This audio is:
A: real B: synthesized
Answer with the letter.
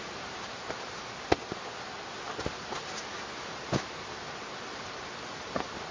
A